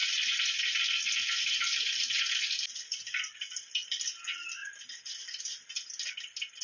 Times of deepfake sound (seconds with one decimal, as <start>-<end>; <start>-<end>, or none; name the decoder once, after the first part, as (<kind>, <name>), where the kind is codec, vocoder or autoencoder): none